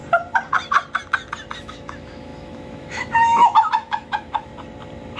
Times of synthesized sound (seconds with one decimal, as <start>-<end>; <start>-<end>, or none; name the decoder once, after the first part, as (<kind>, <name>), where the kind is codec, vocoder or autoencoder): 1.6-4.5 (autoencoder, DAC-VAE)